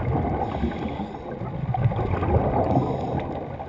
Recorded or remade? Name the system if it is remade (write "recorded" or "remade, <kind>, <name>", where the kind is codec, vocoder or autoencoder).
recorded